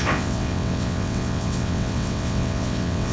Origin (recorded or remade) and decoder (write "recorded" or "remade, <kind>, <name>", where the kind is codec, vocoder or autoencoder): remade, vocoder, WaveNeXt